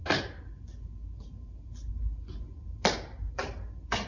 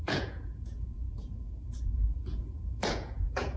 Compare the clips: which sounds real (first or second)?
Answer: first